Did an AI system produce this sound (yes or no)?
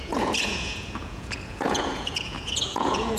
yes